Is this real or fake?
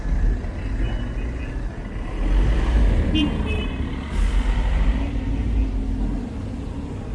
real